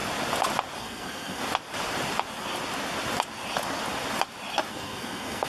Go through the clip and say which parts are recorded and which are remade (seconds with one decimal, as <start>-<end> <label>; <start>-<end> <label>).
0.0-0.8 recorded; 0.8-1.4 remade; 1.4-4.7 recorded; 4.7-5.5 remade